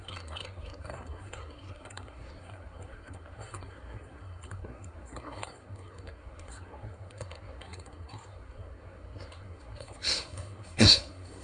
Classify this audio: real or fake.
fake